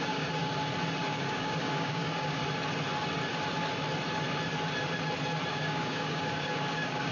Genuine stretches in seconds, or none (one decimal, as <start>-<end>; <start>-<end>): 0.4-1.1; 2.4-5.5